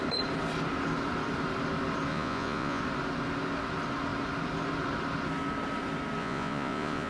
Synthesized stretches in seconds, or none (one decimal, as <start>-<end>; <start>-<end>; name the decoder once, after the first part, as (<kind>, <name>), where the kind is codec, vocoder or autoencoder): 2.1-2.8 (vocoder, Vocos); 6.2-7.1